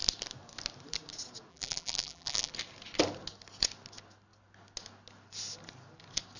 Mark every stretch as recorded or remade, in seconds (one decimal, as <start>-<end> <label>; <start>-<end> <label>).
0.0-1.5 recorded; 1.5-2.5 remade; 2.5-6.4 recorded

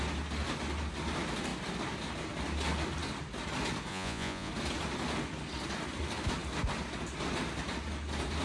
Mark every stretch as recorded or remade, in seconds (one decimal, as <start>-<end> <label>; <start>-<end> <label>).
0.0-3.9 recorded; 3.9-4.5 remade; 4.5-8.4 recorded

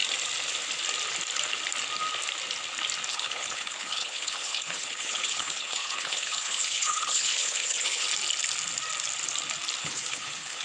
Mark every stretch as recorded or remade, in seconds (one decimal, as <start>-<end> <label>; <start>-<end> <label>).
0.0-3.1 recorded; 3.1-8.1 remade; 8.1-9.8 recorded; 9.8-10.6 remade

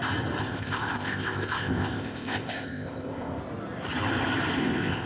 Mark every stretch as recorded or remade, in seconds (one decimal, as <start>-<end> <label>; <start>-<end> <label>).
0.0-0.4 recorded; 0.4-3.4 remade; 3.4-4.6 recorded; 4.6-5.1 remade

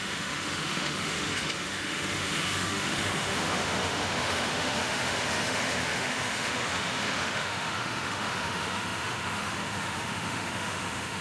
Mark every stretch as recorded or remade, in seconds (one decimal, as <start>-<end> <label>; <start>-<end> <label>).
0.0-11.2 remade